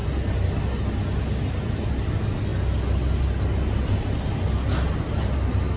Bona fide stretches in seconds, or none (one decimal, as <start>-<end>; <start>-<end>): 0.0-5.8